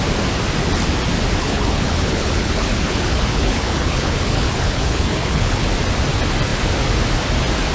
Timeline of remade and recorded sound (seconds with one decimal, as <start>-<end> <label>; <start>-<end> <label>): 0.0-1.4 recorded; 1.4-5.7 remade; 5.7-7.7 recorded